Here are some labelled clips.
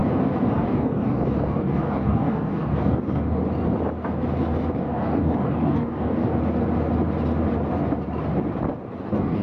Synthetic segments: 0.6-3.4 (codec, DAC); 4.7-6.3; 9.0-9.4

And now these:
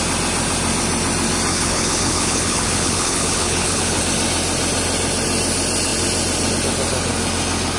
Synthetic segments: 1.5-4.0 (codec, HILCodec)

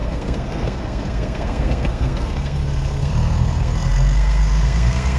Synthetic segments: 0.0-5.2 (codec, SNAC)